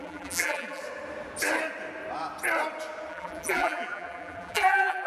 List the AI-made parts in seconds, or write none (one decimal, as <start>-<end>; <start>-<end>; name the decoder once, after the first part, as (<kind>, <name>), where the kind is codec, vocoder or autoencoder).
0.0-0.8 (vocoder, BigVGAN v2); 3.1-5.1